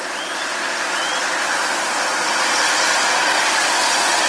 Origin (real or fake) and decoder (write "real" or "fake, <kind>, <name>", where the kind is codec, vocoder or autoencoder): real